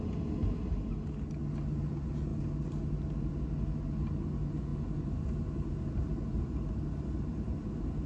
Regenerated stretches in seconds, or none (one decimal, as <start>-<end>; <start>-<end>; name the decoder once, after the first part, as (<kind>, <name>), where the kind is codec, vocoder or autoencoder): 4.7-8.1 (vocoder, BigVGAN v2)